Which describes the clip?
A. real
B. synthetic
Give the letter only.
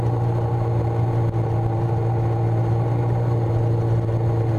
A